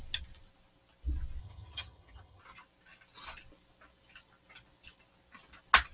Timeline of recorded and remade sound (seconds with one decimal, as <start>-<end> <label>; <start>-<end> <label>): 0.0-1.4 recorded; 1.4-2.4 remade; 2.4-5.9 recorded